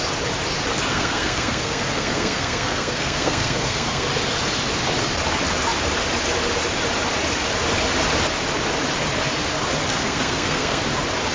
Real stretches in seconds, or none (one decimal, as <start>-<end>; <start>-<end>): 0.0-0.9; 4.1-10.0; 10.8-11.3